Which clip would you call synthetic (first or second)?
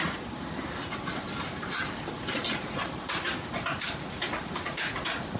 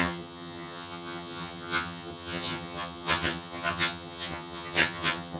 second